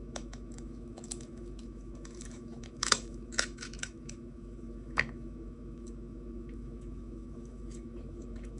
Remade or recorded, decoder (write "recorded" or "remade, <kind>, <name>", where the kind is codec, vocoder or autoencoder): remade, autoencoder, DAC-VAE